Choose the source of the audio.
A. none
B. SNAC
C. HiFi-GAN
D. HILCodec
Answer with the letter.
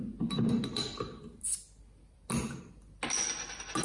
A